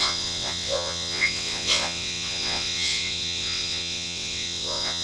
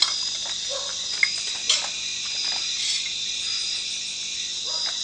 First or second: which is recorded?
second